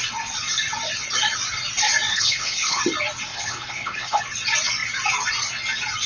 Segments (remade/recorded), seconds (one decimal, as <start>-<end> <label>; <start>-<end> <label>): 0.0-2.1 recorded; 2.1-2.8 remade; 2.8-3.3 recorded; 3.3-4.2 remade; 4.2-6.1 recorded